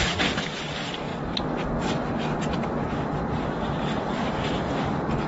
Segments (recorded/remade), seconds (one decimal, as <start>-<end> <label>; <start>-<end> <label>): 0.0-5.3 recorded